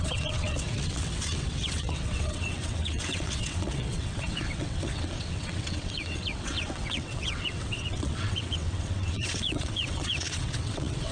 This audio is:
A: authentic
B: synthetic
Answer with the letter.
B